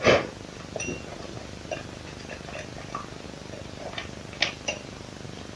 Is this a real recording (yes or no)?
yes